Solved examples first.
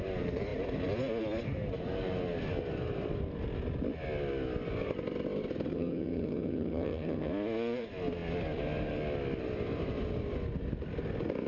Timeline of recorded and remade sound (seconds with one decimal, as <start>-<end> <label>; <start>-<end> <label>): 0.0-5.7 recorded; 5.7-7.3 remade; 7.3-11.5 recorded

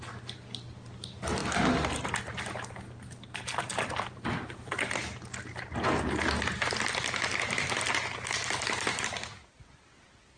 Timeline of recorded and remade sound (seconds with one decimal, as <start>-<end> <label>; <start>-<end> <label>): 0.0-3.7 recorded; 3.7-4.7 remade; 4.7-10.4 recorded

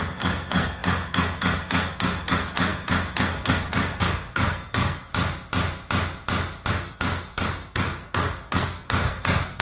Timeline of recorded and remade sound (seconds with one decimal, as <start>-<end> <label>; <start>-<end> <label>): 0.0-5.1 remade; 5.1-6.7 recorded; 6.7-9.6 remade